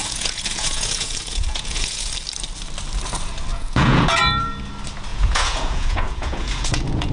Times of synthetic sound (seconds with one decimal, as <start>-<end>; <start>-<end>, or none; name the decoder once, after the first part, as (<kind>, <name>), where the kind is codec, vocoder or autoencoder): 0.0-2.1 (vocoder, Vocos); 3.5-4.2; 5.1-7.1